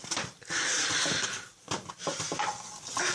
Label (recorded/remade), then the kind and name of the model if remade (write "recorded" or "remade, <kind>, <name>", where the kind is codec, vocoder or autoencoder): recorded